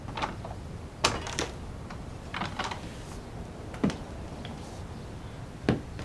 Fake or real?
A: real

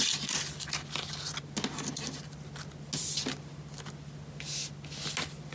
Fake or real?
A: real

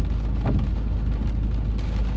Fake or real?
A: real